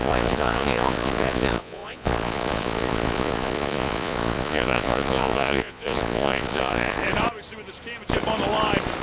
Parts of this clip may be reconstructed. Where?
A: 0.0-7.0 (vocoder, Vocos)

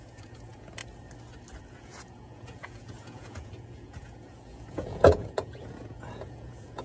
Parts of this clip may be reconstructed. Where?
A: 0.0-0.8 (vocoder, Vocos); 1.7-6.8